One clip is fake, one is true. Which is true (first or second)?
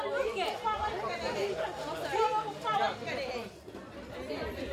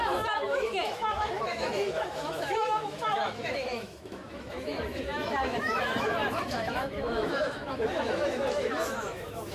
first